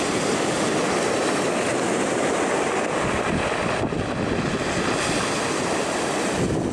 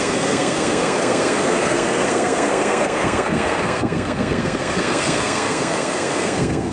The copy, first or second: second